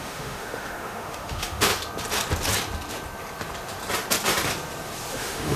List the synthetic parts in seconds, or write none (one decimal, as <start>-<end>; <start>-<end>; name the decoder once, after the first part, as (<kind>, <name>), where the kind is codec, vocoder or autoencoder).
0.0-1.7 (autoencoder, DAC-VAE); 5.1-5.6